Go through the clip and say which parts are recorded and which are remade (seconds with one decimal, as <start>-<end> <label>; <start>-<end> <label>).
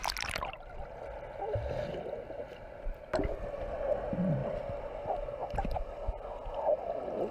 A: 0.0-7.3 recorded